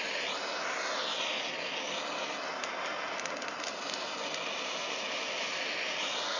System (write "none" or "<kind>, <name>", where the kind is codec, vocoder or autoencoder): none